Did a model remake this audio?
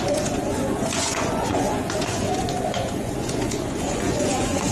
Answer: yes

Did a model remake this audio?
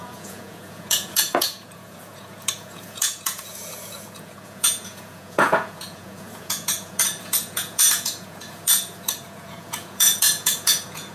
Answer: yes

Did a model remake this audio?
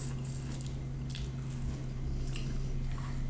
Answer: no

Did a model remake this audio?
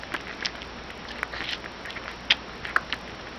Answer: no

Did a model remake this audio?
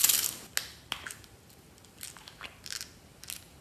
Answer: no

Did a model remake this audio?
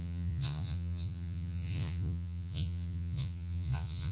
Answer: yes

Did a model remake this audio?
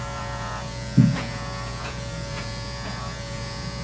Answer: yes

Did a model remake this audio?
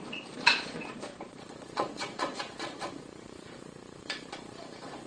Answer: yes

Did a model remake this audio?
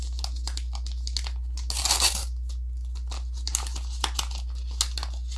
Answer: no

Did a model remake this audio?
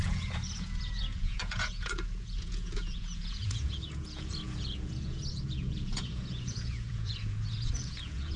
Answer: yes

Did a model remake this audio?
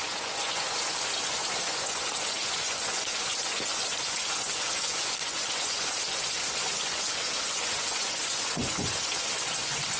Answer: yes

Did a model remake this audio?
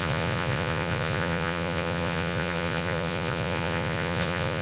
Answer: yes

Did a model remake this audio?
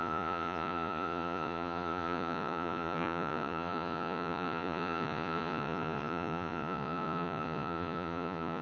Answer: yes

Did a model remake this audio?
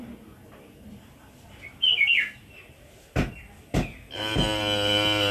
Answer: no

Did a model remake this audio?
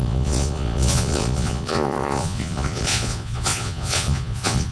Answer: yes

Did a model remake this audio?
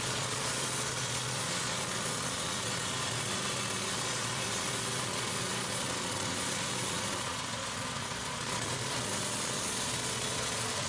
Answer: yes